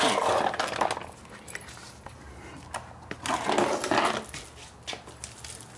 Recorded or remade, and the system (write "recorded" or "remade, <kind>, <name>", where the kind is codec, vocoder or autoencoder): recorded